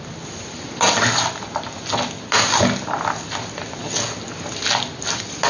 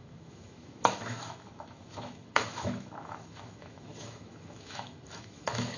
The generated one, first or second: second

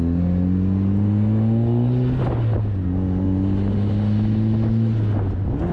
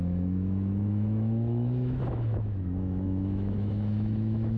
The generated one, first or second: second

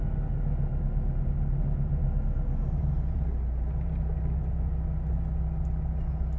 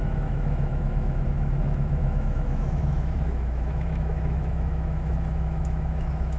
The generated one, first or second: second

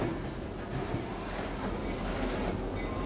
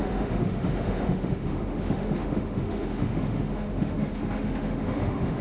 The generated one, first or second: second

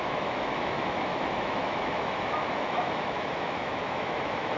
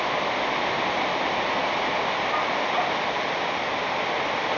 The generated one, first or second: first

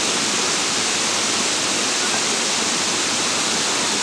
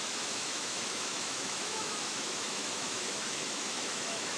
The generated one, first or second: second